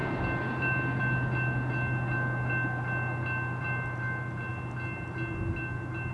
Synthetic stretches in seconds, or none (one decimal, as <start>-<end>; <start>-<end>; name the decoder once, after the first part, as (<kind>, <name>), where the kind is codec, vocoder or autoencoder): none